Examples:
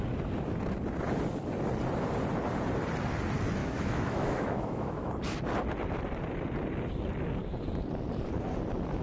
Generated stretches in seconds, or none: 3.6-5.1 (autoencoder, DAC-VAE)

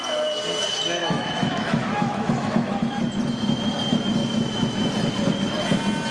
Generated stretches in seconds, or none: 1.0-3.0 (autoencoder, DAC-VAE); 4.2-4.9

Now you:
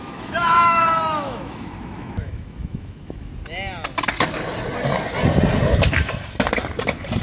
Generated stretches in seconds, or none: 0.0-3.3 (autoencoder, DAC-VAE)